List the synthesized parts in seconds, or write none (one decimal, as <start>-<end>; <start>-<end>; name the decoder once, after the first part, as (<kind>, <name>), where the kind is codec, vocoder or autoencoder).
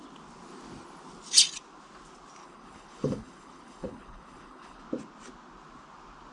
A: 2.4-4.8 (codec, HILCodec)